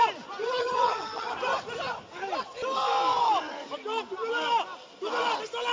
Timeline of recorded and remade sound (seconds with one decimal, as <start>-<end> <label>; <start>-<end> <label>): 0.0-0.6 recorded; 0.6-1.3 remade; 1.3-5.7 recorded